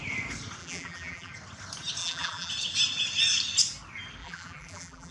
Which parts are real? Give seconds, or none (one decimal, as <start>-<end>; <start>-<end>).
0.0-0.6; 1.3-2.0; 2.5-4.2